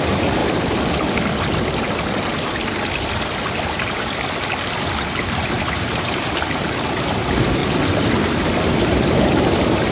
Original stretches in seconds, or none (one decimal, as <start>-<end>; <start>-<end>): 0.4-5.3; 7.6-8.2